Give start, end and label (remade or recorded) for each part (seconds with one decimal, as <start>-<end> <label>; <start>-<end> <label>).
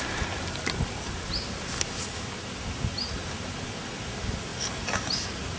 0.0-5.6 recorded